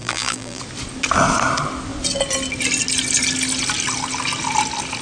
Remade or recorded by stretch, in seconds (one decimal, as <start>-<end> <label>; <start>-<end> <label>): 0.0-0.6 remade; 0.6-5.0 recorded